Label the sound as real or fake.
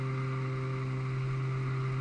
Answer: real